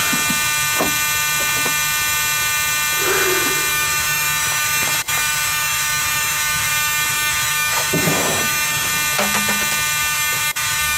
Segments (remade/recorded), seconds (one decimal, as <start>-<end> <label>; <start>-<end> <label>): 0.0-3.7 recorded; 3.7-8.9 remade; 8.9-10.0 recorded; 10.0-11.0 remade